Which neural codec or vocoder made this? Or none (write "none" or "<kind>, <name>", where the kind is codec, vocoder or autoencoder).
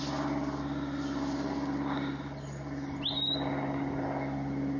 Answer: none